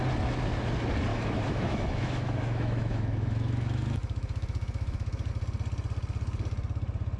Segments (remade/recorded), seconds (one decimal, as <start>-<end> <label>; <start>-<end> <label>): 0.0-1.1 recorded; 1.1-5.3 remade; 5.3-7.2 recorded